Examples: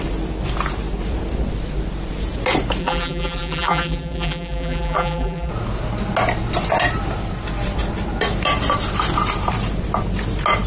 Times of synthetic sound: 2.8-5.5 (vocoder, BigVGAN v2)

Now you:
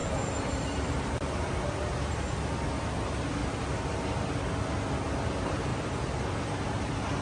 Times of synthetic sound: 0.0-1.5 (vocoder, BigVGAN v2); 3.4-3.9; 5.7-6.2